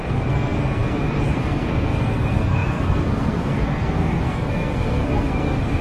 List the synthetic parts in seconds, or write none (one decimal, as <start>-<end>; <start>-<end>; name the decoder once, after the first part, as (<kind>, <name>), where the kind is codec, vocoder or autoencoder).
0.0-5.8 (codec, SNAC)